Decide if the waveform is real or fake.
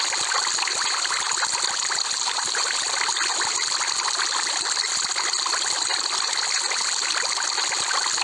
real